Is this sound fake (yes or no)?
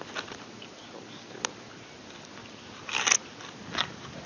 no